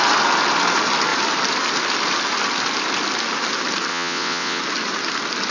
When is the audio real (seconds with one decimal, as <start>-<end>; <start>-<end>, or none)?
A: 0.0-3.9; 4.6-5.5

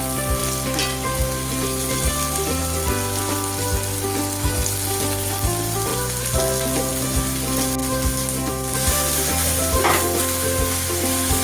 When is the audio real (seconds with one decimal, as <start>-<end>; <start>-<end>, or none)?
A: 0.0-11.4

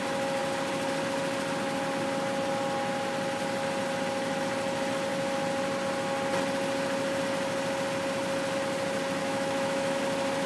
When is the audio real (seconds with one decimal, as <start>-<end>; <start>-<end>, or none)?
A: 0.0-9.2; 10.0-10.5

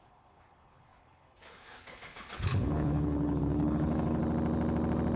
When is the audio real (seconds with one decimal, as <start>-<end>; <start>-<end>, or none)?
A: 4.2-5.2

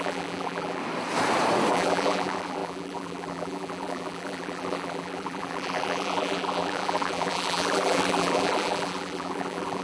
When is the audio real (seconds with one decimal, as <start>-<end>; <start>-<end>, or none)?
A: 0.8-1.7

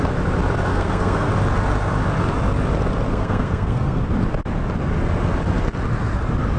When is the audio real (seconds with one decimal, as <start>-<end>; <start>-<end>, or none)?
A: 0.0-0.7; 1.3-3.1; 4.0-6.6

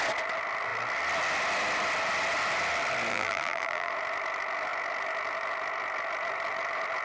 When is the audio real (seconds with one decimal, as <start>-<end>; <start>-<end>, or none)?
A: 0.0-3.1; 3.9-7.0